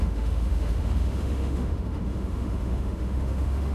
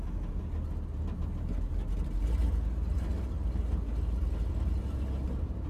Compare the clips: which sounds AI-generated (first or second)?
first